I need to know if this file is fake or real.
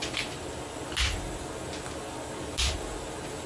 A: real